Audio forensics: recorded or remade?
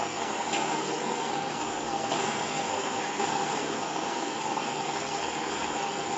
remade